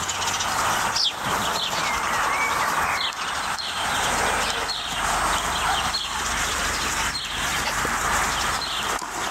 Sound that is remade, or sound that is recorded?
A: recorded